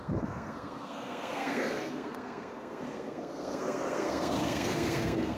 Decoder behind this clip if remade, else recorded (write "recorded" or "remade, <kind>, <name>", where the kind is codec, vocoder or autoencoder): remade, codec, SNAC